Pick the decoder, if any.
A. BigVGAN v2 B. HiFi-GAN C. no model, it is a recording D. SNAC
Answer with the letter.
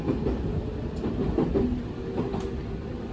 A